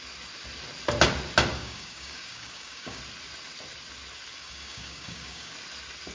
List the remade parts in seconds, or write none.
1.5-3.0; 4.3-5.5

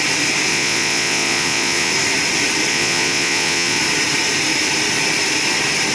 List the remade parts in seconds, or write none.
0.5-1.9; 2.7-3.8

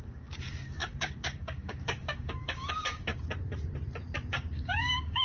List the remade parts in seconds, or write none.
0.0-3.1; 4.3-5.2